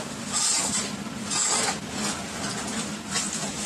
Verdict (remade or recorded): recorded